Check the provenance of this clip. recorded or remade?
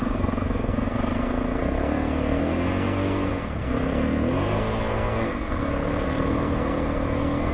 remade